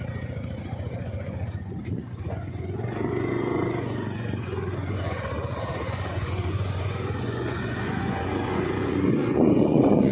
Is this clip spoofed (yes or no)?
yes